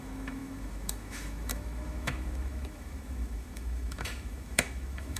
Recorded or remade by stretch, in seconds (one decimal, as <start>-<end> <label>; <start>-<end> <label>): 0.0-5.2 remade